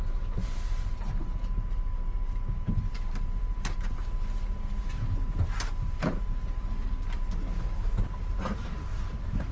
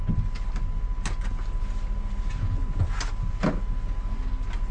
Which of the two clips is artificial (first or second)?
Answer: first